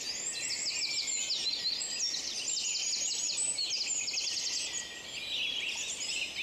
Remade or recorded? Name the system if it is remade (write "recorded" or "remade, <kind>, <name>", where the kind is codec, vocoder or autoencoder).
recorded